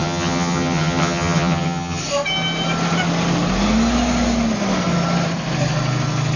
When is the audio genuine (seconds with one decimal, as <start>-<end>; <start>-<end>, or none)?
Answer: 2.0-6.4